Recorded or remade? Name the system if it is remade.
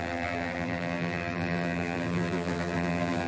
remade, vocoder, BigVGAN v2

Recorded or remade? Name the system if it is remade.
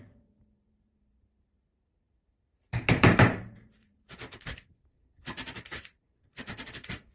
remade, vocoder, BigVGAN v2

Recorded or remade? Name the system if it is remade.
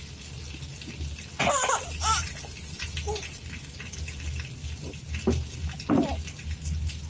recorded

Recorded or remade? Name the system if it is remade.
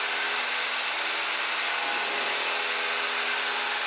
recorded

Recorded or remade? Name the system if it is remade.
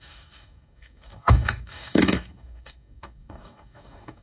remade, codec, DAC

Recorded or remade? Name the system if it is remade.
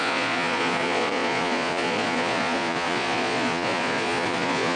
remade, vocoder, Vocos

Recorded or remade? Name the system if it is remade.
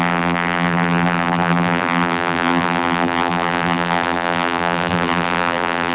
remade, vocoder, BigVGAN v2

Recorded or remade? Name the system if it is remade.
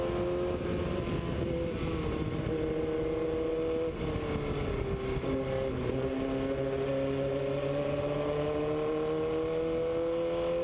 recorded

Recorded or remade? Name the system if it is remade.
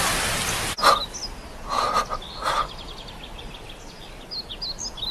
recorded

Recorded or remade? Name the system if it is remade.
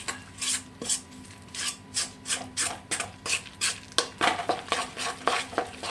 recorded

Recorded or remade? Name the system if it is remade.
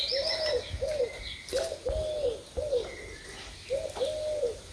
recorded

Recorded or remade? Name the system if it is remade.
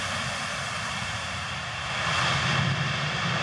remade, vocoder, BigVGAN v2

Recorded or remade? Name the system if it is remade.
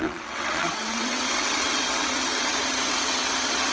remade, vocoder, WaveNeXt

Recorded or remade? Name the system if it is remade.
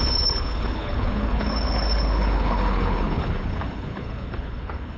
remade, codec, HILCodec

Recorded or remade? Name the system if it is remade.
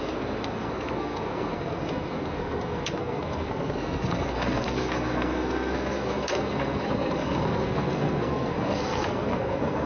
remade, codec, SNAC